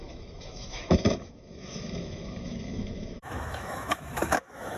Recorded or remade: remade